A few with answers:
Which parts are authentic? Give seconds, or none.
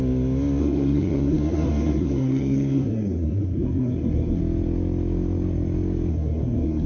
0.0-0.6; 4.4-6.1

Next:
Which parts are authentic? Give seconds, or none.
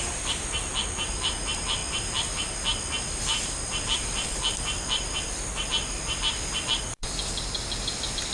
0.0-8.3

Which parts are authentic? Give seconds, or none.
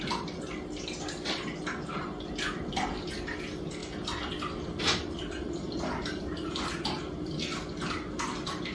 0.0-8.7